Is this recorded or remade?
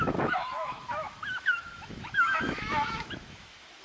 remade